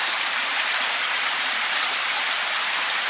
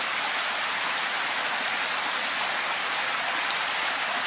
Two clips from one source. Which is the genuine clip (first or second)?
second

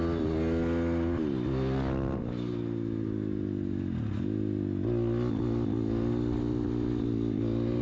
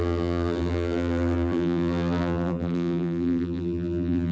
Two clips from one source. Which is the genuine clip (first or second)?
first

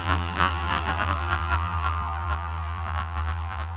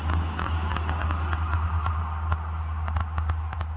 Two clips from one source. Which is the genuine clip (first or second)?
second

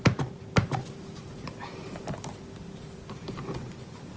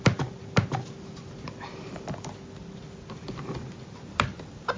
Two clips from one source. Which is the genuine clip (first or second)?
second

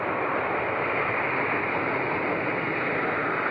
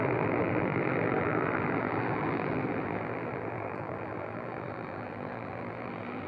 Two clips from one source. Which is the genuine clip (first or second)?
first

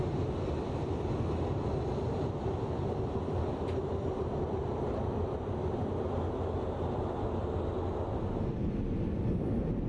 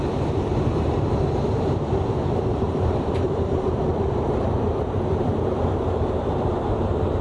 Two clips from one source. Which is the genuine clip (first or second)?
first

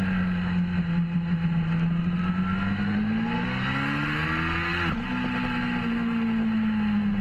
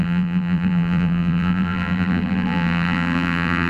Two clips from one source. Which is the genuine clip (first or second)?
first